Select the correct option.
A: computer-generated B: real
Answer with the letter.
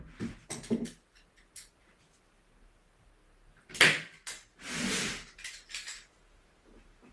B